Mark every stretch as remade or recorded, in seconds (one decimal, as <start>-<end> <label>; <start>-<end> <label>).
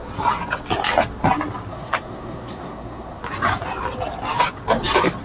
0.0-1.7 recorded; 1.7-3.2 remade; 3.2-5.2 recorded